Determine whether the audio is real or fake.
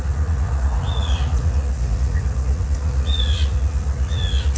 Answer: fake